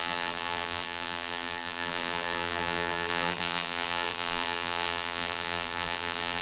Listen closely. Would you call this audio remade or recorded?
remade